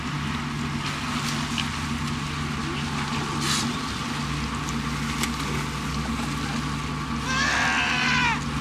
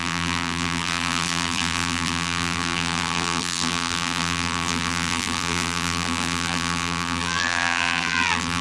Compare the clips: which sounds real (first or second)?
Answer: first